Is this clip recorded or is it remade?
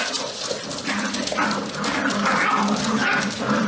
recorded